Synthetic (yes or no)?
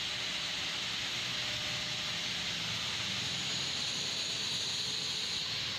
no